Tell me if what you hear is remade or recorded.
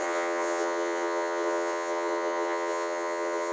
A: remade